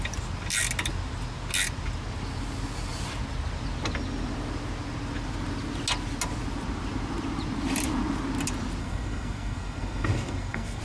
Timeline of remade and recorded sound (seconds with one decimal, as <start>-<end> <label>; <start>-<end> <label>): 0.0-8.8 recorded; 8.8-10.8 remade